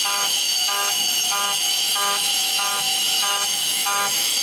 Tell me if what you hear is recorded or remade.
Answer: remade